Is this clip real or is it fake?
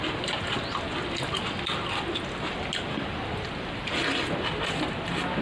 real